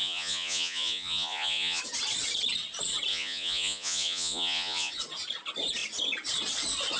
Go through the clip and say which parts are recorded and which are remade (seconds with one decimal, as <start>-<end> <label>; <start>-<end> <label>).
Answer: 0.0-1.8 remade; 1.8-3.1 recorded; 3.1-4.9 remade; 4.9-7.0 recorded